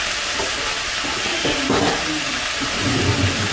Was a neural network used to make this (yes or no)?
no